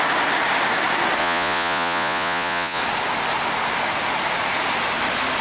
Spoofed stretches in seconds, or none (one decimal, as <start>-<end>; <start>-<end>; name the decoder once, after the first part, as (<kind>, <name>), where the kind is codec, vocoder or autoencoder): 1.2-2.8 (vocoder, Vocos)